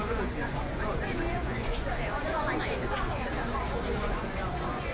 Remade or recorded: remade